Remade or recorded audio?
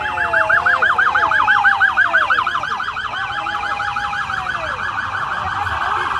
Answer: recorded